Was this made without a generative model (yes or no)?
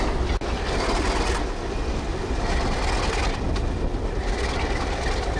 yes